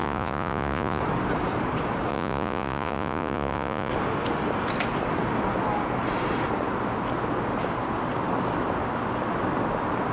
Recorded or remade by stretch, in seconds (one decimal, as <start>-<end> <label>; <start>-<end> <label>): 0.0-1.0 remade; 1.0-2.1 recorded; 2.1-3.9 remade; 3.9-10.1 recorded